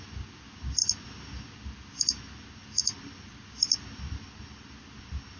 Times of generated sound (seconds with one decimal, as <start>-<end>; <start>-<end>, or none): 2.8-3.4